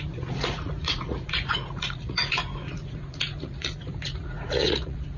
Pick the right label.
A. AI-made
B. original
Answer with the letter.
A